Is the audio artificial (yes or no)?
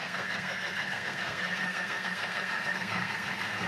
yes